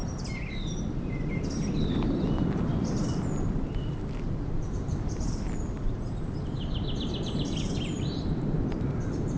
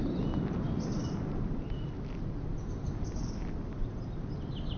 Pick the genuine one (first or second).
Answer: second